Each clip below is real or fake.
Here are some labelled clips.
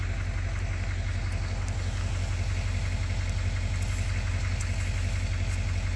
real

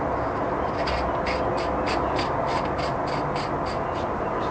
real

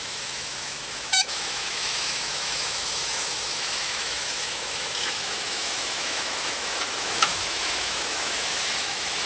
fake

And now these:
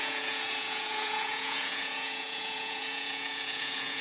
fake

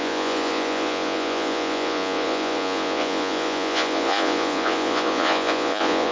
fake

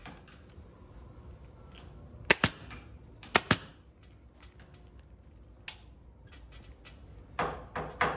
real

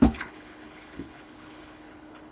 fake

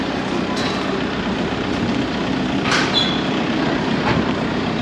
real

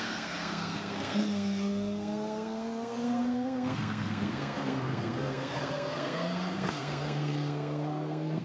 fake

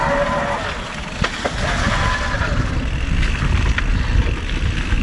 real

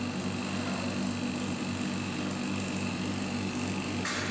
real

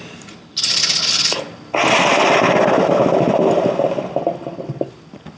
real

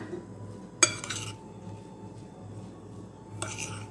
real